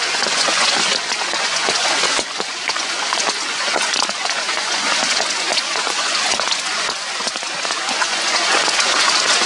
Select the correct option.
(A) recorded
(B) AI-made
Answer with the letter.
B